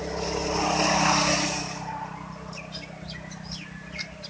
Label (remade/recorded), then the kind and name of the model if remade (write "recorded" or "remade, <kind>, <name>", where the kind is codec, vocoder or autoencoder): recorded